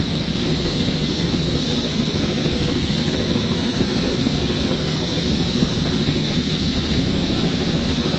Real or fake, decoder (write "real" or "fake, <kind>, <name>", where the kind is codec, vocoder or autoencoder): fake, codec, SNAC